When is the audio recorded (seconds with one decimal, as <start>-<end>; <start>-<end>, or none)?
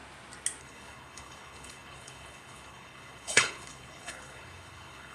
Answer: 0.0-0.6